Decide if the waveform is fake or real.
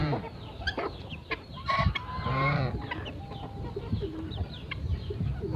fake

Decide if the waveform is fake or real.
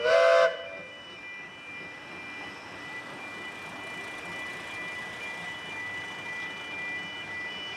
real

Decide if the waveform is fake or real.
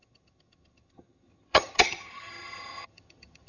fake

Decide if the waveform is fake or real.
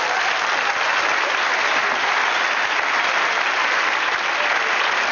real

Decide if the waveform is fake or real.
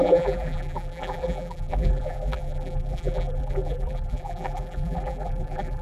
fake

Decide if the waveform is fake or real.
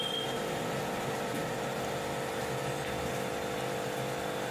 real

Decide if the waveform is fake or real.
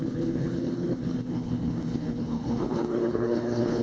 fake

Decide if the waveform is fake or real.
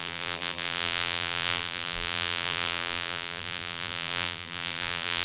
fake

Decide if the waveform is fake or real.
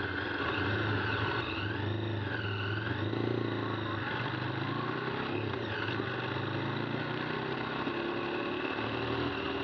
real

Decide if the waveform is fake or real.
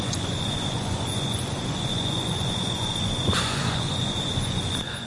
fake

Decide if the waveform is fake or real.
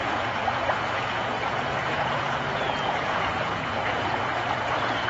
fake